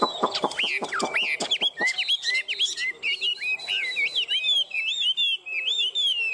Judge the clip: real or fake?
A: real